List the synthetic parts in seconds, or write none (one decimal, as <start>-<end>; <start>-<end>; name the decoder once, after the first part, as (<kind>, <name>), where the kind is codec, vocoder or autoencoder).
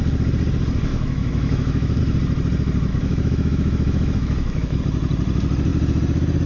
0.9-2.0 (autoencoder, DAC-VAE); 2.9-4.8